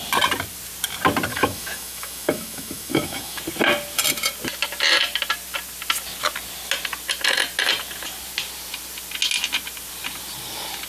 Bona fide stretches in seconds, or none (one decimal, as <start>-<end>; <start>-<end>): 0.0-1.3; 3.4-10.9